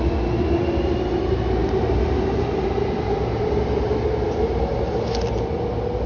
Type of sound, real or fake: real